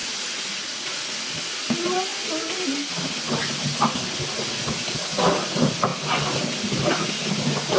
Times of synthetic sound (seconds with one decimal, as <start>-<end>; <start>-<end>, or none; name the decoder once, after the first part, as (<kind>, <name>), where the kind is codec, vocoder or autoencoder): 0.0-1.3 (vocoder, Vocos)